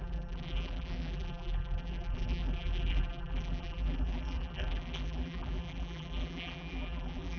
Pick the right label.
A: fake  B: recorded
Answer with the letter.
A